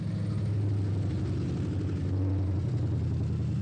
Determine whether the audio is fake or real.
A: real